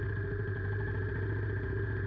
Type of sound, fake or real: real